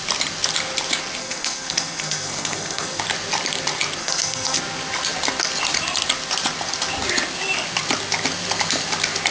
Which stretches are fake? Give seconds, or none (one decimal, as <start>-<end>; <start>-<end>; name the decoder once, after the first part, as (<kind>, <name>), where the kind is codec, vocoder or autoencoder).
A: 1.2-3.0 (codec, SNAC); 4.0-4.6